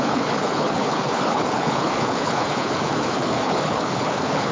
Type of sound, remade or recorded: remade